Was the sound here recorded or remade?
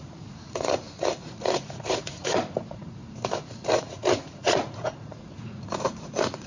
remade